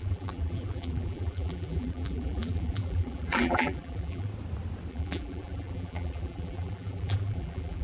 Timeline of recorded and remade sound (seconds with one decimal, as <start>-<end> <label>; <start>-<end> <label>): 0.0-4.3 remade; 4.3-4.9 recorded; 4.9-7.8 remade

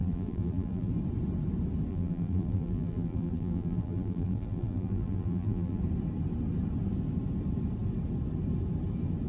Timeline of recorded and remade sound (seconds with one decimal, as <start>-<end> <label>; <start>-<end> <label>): 0.0-0.9 remade; 0.9-1.9 recorded; 1.9-5.8 remade; 5.8-9.3 recorded

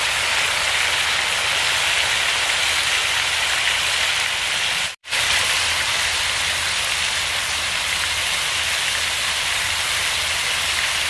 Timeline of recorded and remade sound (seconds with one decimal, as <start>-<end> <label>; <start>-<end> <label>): 0.0-5.0 recorded; 5.0-5.7 remade; 5.7-11.1 recorded

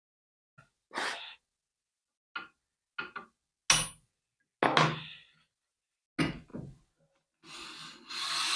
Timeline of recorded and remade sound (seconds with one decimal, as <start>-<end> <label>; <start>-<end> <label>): 0.0-8.6 recorded